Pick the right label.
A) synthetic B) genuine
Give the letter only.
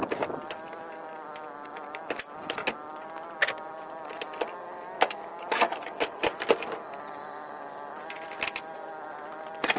B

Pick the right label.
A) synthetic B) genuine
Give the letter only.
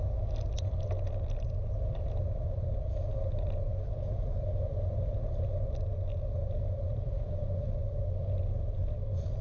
B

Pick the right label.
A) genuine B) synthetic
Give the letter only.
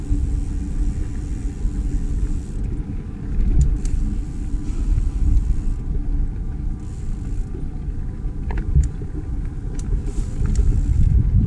A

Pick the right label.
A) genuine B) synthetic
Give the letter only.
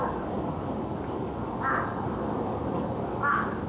B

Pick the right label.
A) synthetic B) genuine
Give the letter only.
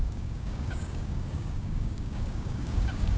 A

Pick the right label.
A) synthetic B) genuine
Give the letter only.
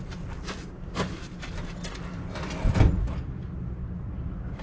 B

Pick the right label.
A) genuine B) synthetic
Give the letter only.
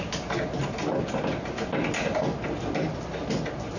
A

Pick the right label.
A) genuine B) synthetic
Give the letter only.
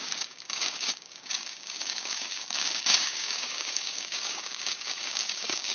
B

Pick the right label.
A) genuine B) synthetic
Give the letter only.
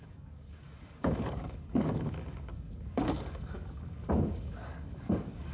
B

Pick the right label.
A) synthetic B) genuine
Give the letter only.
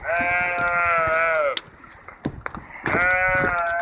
B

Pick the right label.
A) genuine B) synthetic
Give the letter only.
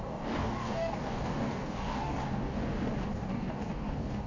B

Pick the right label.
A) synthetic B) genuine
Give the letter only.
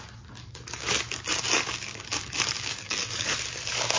A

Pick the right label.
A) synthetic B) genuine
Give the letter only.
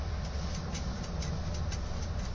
B